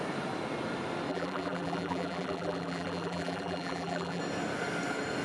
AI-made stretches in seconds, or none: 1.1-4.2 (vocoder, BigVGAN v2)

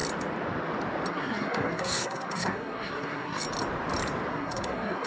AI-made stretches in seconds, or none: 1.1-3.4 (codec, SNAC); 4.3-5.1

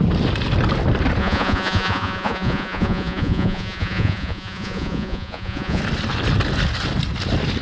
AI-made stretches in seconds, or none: 1.2-5.8 (vocoder, Vocos)

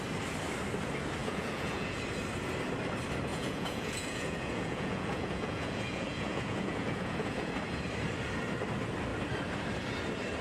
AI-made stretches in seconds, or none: 1.2-2.0 (vocoder, Vocos); 3.3-7.5

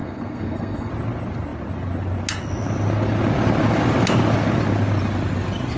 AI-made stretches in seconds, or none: 0.0-0.9 (codec, SNAC)

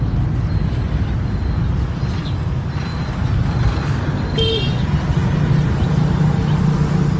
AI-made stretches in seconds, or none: none